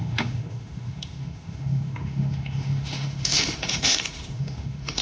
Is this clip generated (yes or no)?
yes